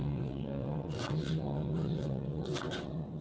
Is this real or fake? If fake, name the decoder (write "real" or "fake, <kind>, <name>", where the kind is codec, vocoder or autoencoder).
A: fake, vocoder, WaveNeXt